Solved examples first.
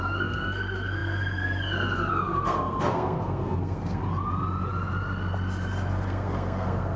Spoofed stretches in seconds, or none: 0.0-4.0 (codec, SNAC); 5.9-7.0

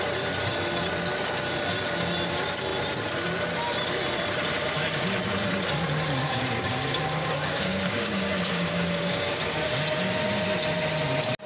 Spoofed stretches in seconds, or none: 6.2-9.7 (codec, DAC)